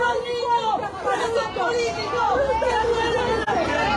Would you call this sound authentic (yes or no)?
yes